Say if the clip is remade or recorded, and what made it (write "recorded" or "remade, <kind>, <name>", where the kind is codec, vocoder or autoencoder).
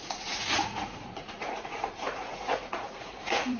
remade, vocoder, Vocos